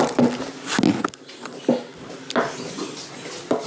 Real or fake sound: real